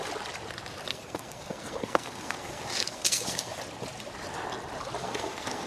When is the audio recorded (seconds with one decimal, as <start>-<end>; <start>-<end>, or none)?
0.0-0.9; 3.6-5.0